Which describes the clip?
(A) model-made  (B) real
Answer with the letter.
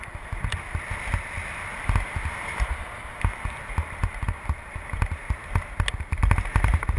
B